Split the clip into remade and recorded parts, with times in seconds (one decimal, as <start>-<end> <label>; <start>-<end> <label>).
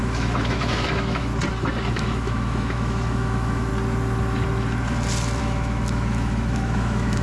0.0-1.3 remade; 1.3-1.9 recorded; 1.9-3.7 remade; 3.7-5.4 recorded; 5.4-7.2 remade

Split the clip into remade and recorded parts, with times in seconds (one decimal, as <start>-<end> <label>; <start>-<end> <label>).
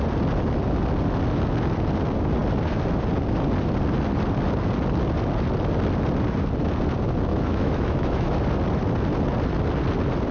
0.0-7.3 recorded; 7.3-8.4 remade; 8.4-10.3 recorded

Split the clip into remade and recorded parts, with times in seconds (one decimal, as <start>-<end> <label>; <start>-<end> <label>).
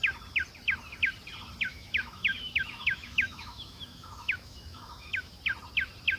0.0-1.7 recorded; 1.7-5.4 remade; 5.4-6.2 recorded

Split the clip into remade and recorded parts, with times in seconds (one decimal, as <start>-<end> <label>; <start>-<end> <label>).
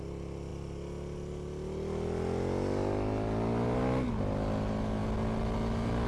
0.0-6.1 recorded